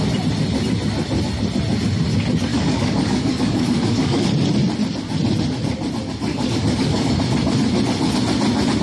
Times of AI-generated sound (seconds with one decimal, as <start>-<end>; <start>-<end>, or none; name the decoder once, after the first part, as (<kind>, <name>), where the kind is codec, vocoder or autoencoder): 2.5-4.2 (codec, DAC); 6.3-7.2

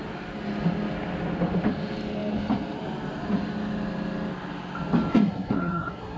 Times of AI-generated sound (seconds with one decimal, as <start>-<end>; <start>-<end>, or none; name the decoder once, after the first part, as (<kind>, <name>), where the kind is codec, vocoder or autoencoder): 5.1-6.2 (codec, SNAC)